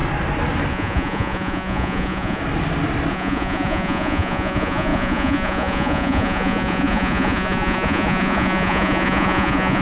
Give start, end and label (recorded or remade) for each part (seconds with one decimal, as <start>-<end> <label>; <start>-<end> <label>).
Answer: 0.0-0.7 recorded; 0.7-2.4 remade; 2.4-3.1 recorded; 3.1-9.8 remade